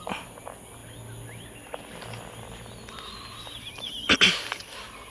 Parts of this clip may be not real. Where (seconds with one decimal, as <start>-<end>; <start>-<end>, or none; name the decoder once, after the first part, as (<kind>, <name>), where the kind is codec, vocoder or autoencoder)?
none